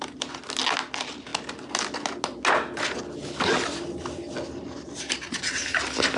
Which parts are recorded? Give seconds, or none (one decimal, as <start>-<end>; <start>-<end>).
0.0-6.2